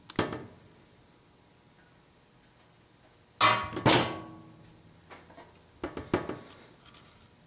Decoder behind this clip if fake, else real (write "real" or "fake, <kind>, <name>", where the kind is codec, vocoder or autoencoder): real